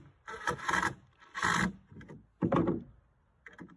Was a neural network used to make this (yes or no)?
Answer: no